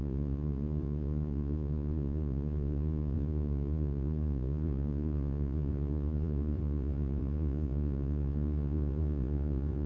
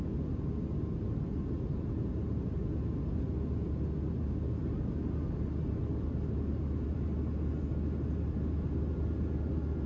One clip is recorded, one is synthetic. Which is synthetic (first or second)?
first